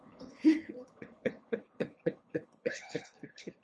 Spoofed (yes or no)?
yes